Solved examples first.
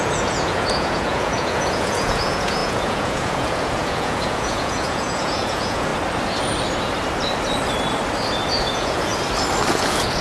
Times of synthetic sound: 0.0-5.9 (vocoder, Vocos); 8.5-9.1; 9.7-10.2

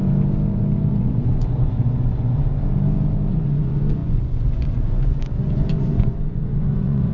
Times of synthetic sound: 0.9-2.4 (vocoder, Vocos); 3.3-7.1

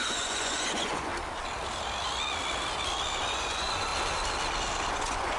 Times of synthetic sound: 0.0-1.1 (vocoder, Vocos); 3.3-3.9; 4.9-5.4

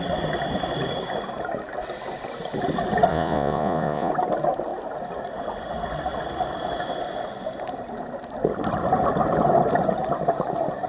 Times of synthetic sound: 3.1-4.1 (vocoder, Vocos)

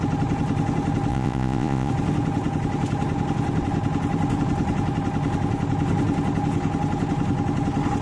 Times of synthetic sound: 1.1-1.9 (vocoder, Vocos)